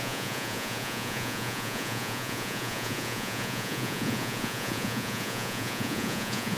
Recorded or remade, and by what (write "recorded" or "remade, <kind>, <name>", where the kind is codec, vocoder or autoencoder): remade, vocoder, Vocos